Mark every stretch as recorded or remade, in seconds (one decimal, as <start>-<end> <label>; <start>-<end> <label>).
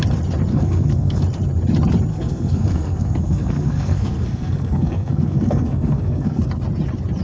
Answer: 0.0-0.5 recorded; 0.5-1.2 remade; 1.2-2.1 recorded; 2.1-6.4 remade; 6.4-7.2 recorded